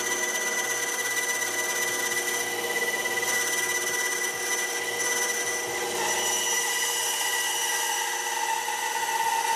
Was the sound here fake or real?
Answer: real